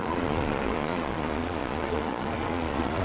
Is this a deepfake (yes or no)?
yes